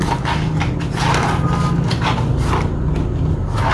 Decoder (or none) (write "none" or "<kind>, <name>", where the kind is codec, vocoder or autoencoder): none